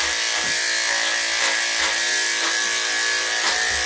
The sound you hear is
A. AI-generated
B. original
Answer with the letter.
B